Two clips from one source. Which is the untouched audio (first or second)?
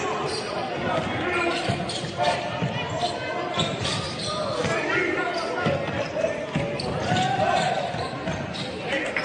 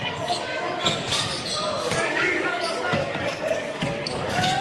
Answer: first